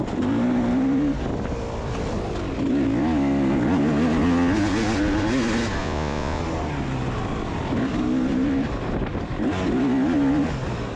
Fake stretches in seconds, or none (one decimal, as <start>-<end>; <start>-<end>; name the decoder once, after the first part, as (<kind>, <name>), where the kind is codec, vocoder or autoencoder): 5.8-6.4 (vocoder, Vocos)